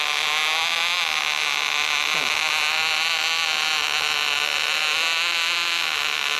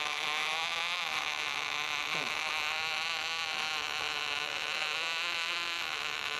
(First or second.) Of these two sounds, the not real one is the second